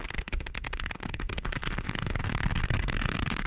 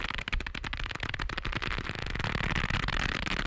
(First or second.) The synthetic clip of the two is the first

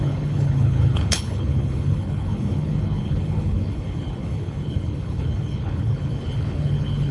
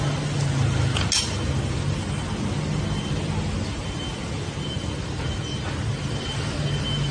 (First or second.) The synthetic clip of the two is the first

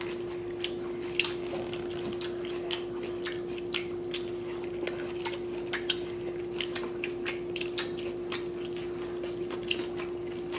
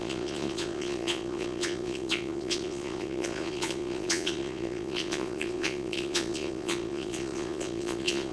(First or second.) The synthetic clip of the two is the second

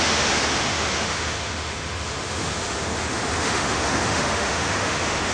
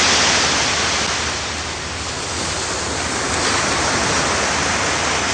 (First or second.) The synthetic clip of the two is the first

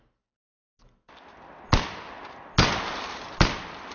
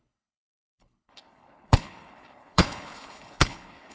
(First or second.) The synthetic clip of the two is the second